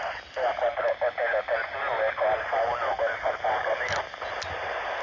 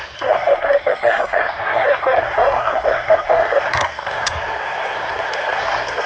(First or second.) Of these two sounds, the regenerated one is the second